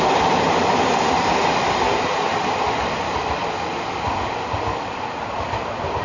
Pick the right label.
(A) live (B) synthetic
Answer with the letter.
A